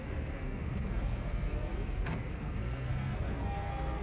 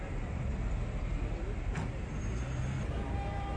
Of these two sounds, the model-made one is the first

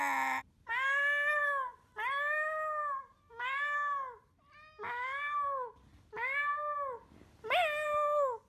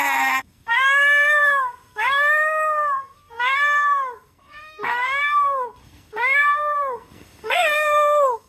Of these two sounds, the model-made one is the second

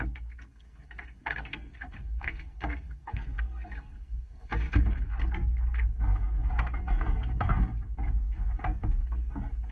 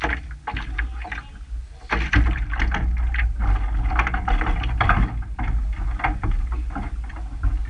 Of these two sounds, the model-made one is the first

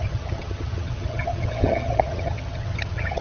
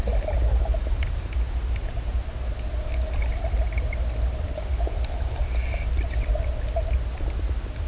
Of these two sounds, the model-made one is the first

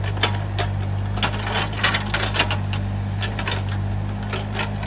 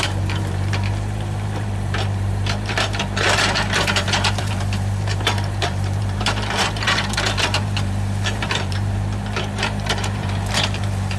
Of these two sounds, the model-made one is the second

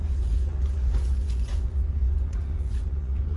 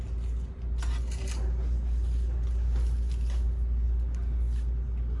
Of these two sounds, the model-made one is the first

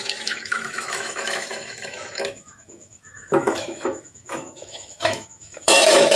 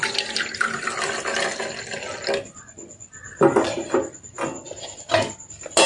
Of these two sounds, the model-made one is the first